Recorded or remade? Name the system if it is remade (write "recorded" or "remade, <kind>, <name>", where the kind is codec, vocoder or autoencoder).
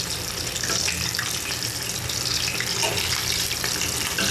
recorded